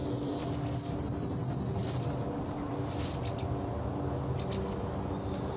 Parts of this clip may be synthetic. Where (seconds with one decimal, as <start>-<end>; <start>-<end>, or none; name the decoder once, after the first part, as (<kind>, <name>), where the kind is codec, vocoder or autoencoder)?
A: 0.0-3.4 (vocoder, BigVGAN v2)